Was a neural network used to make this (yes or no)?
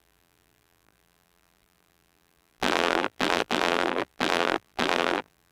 yes